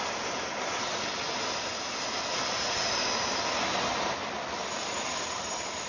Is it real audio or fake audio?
real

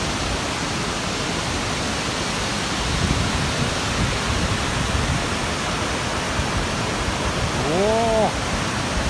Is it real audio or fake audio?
real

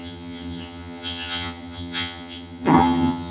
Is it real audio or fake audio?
fake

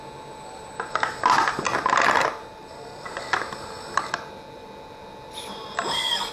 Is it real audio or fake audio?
real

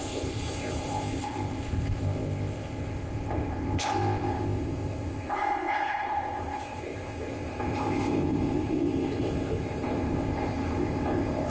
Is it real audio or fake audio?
fake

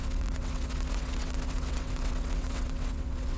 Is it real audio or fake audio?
fake